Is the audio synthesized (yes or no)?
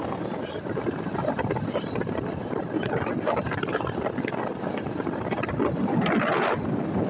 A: no